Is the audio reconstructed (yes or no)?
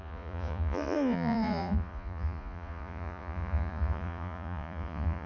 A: yes